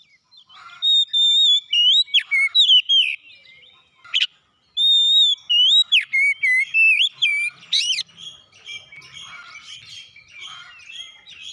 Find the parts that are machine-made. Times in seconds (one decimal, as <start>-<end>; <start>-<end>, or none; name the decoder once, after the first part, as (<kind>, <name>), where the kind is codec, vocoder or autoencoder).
none